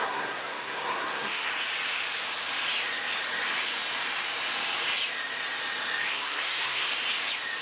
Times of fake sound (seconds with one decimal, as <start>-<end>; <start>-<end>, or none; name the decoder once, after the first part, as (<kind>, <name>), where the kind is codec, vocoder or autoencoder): 0.0-1.5 (codec, SNAC); 6.1-6.9